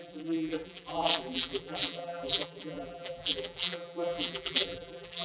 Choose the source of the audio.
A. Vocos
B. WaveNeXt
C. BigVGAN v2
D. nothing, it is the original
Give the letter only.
C